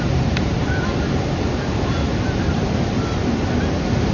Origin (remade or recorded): recorded